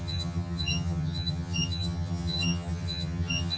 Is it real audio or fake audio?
fake